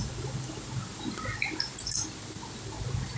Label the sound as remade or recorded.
recorded